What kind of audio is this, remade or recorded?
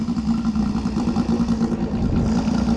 recorded